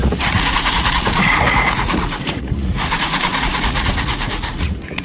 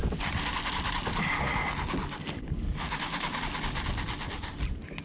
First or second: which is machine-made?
first